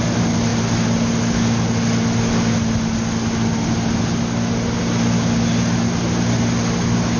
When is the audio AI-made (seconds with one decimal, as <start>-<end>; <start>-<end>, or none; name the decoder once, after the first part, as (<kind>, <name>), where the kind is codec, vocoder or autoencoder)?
none